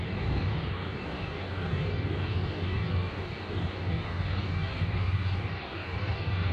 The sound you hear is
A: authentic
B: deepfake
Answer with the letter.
B